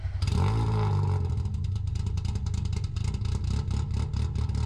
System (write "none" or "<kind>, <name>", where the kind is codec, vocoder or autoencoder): none